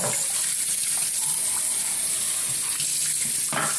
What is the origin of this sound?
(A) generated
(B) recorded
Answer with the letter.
B